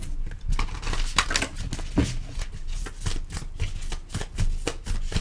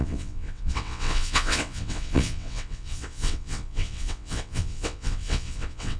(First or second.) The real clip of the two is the first